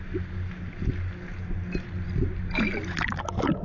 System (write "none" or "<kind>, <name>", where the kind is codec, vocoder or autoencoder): none